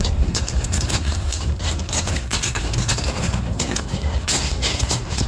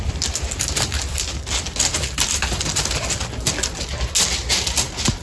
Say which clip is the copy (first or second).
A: first